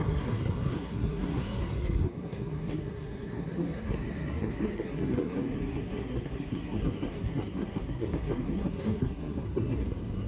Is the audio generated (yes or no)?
yes